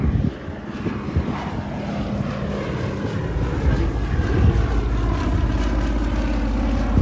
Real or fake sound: real